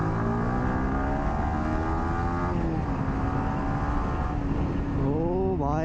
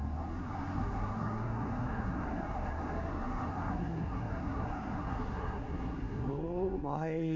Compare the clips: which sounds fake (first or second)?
second